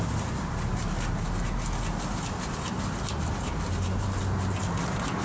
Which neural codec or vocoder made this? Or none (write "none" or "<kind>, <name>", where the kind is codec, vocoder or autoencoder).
none